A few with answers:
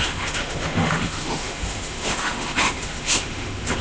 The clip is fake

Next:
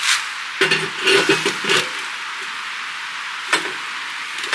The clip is real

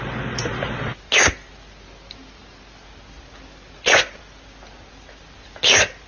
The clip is real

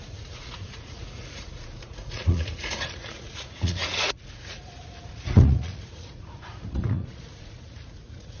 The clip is fake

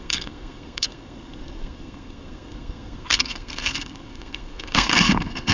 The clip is fake